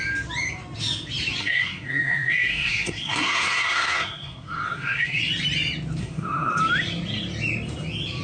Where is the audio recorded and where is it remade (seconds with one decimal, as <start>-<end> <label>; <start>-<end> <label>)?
0.0-1.4 recorded; 1.4-5.2 remade; 5.2-6.0 recorded; 6.0-6.6 remade; 6.6-8.2 recorded